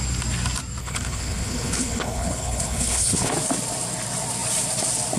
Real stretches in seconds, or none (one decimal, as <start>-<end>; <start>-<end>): 0.0-0.8; 3.3-5.2